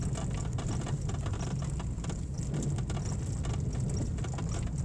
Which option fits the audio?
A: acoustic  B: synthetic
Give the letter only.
A